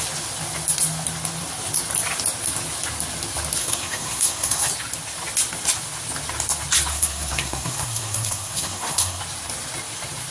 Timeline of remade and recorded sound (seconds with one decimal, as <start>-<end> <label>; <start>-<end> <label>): 0.0-3.6 recorded; 3.6-4.7 remade; 4.7-6.9 recorded; 6.9-9.2 remade; 9.2-10.3 recorded